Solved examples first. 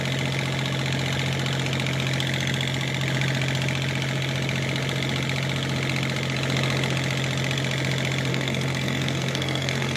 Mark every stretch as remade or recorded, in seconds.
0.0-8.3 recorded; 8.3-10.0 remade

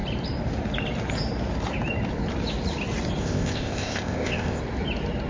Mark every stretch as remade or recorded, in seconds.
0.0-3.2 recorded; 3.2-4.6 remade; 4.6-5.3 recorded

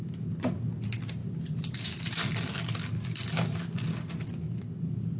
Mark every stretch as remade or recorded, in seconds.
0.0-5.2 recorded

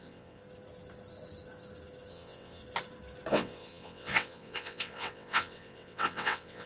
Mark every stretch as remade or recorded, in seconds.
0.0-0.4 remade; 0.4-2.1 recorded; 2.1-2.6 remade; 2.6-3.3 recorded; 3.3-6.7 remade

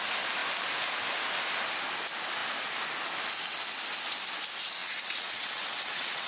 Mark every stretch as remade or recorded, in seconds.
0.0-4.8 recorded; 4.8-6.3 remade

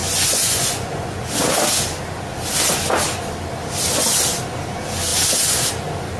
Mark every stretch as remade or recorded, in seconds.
0.0-1.2 remade; 1.2-6.2 recorded